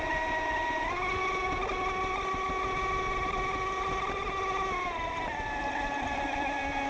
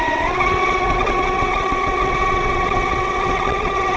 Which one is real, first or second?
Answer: first